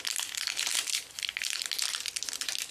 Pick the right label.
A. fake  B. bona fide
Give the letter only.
B